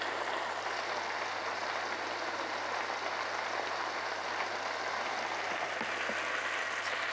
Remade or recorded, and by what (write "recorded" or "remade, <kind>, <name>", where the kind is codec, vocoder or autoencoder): recorded